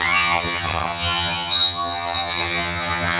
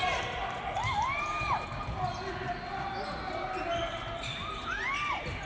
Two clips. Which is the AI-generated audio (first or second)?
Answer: first